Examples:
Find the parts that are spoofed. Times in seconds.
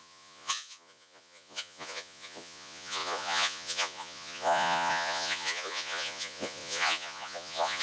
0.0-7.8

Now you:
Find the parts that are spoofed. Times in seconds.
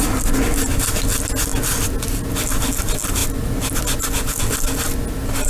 none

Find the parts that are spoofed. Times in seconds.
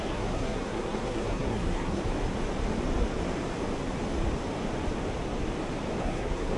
0.0-2.0; 6.0-6.6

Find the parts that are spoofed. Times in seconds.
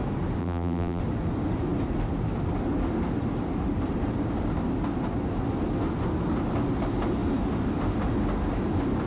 0.4-1.0